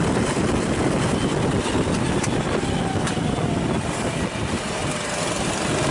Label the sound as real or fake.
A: real